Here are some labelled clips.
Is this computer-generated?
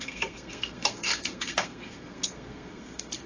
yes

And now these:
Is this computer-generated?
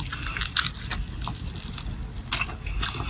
no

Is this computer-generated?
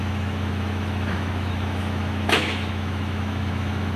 yes